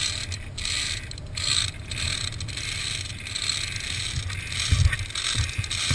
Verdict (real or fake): real